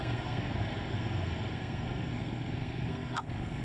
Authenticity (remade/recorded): remade